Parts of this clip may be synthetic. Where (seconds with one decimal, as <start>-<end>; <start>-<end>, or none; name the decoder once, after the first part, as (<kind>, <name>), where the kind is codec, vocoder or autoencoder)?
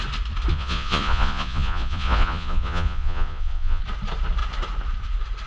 0.5-3.8 (vocoder, Vocos)